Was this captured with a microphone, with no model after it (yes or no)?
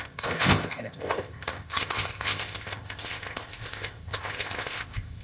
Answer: no